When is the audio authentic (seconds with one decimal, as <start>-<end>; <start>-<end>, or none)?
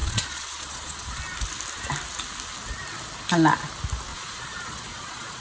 1.2-4.1